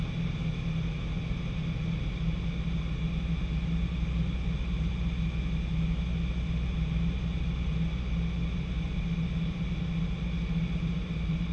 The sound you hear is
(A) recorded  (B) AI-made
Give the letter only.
A